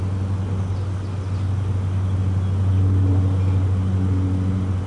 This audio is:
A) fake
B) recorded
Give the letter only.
B